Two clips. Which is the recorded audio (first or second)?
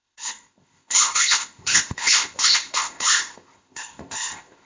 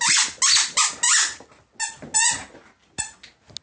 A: second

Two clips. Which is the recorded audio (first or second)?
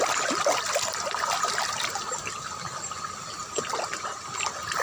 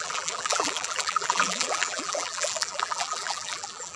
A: first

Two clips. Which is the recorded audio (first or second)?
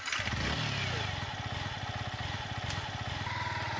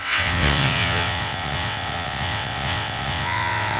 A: first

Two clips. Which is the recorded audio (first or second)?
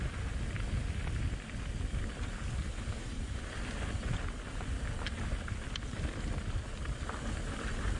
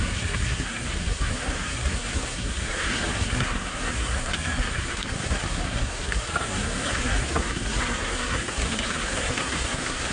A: first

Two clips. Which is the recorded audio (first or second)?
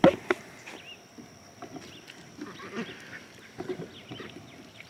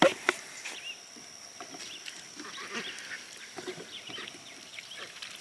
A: first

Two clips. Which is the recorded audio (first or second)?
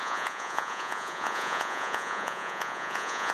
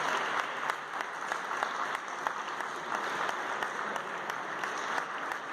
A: second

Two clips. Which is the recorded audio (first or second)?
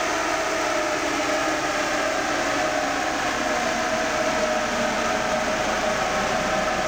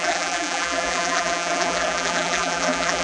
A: first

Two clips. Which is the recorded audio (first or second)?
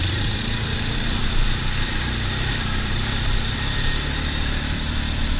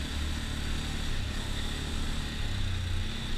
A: second